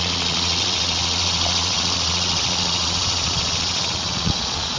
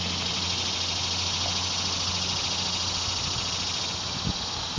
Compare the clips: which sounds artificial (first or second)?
first